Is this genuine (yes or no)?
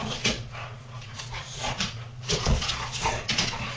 no